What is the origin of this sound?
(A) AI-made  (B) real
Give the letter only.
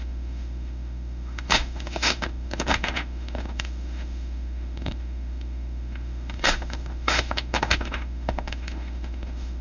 A